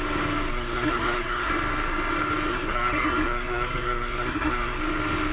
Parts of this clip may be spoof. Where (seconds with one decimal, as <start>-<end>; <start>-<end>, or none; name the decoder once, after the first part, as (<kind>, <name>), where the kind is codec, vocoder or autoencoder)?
0.5-1.5 (codec, SNAC); 2.5-4.8